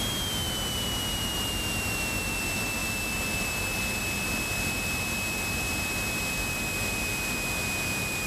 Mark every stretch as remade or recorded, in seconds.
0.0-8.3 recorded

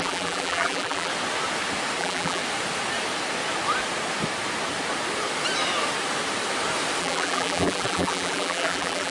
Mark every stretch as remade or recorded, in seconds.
0.0-1.1 remade; 1.1-2.0 recorded; 2.0-2.4 remade; 2.4-7.0 recorded; 7.0-9.1 remade

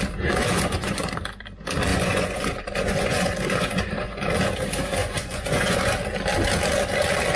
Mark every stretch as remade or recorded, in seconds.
0.0-0.4 recorded; 0.4-1.1 remade; 1.1-1.9 recorded; 1.9-4.2 remade; 4.2-5.0 recorded; 5.0-5.9 remade; 5.9-7.4 recorded

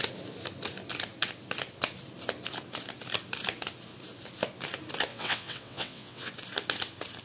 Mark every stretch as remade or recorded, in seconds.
0.0-5.1 recorded; 5.1-6.3 remade; 6.3-7.2 recorded